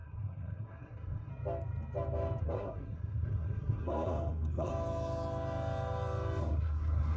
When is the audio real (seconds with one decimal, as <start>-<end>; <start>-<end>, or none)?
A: 1.3-2.4; 4.7-6.4